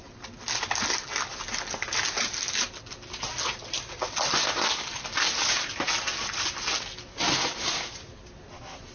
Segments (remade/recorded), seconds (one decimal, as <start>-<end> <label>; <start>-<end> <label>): 0.0-8.9 recorded